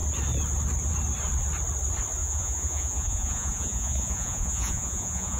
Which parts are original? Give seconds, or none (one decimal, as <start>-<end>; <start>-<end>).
0.0-2.2